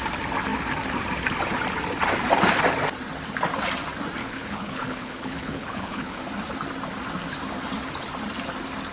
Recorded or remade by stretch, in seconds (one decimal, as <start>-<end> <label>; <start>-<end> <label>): 0.0-4.2 recorded; 4.2-6.2 remade; 6.2-8.9 recorded